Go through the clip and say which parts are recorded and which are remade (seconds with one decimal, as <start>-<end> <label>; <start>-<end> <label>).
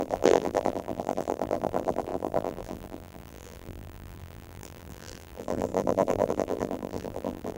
0.0-7.6 remade